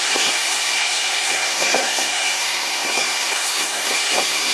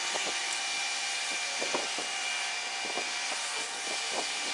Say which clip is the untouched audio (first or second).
second